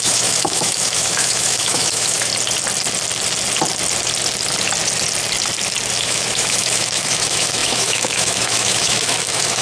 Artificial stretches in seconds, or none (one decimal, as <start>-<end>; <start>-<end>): 0.0-2.3; 6.0-9.6